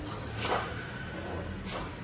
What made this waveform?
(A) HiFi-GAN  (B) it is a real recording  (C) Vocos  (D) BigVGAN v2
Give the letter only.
B